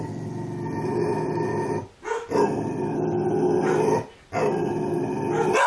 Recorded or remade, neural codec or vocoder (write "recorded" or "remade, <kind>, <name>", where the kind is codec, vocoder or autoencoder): recorded